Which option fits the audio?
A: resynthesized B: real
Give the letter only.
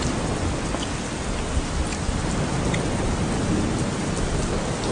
B